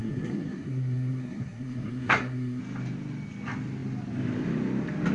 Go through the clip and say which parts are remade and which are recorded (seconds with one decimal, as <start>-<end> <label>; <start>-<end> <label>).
0.0-2.6 remade; 2.6-5.1 recorded